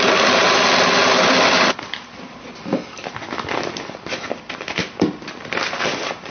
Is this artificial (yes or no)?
no